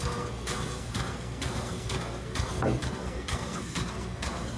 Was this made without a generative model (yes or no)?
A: no